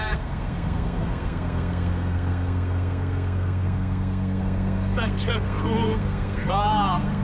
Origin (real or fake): fake